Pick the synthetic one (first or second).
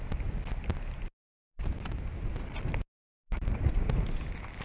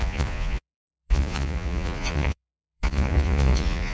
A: second